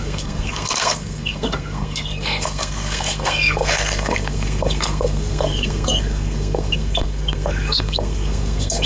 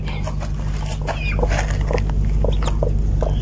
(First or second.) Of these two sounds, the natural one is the second